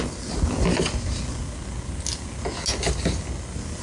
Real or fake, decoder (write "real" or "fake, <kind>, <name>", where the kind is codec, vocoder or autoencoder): real